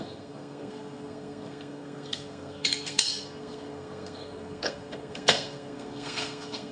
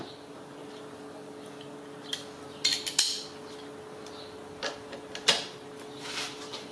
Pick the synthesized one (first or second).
first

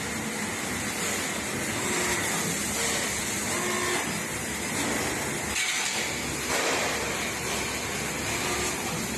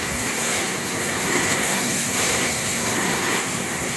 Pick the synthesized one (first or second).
second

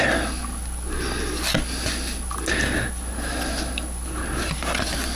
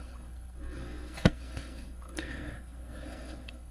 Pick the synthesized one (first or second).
second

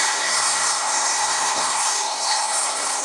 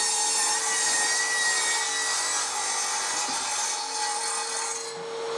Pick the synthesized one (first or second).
first